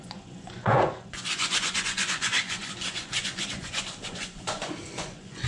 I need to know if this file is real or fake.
fake